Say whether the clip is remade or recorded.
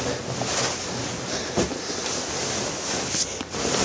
recorded